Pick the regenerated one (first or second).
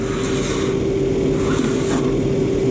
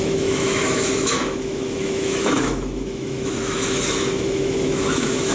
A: second